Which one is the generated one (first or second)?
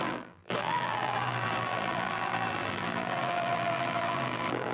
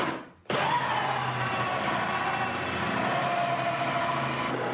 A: first